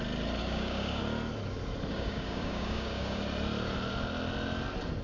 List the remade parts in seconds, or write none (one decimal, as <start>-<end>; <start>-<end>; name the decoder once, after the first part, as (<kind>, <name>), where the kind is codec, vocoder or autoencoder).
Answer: 0.4-1.0 (codec, DAC); 1.9-3.2